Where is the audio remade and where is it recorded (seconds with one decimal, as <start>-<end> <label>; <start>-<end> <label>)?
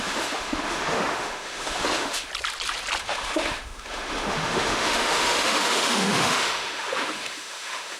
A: 0.0-2.3 remade; 2.3-3.0 recorded; 3.0-8.0 remade